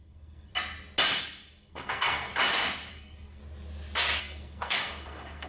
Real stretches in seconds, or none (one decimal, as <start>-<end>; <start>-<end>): 0.5-1.7; 2.3-2.9; 3.4-4.2